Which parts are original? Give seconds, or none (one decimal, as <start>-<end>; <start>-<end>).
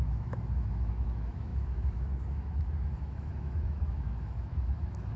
none